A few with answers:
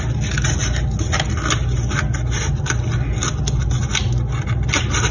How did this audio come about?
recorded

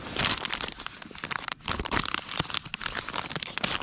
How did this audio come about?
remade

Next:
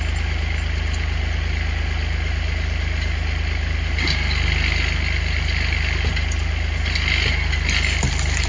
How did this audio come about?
recorded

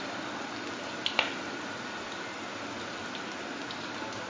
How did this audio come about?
recorded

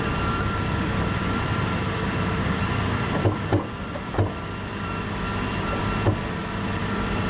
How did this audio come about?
remade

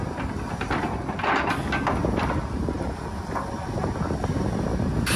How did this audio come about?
recorded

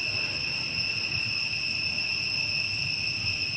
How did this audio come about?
recorded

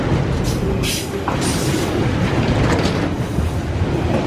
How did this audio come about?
recorded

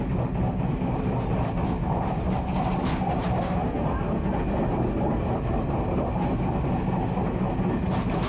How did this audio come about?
recorded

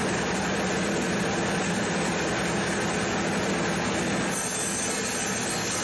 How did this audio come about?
recorded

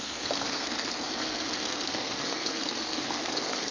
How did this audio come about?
remade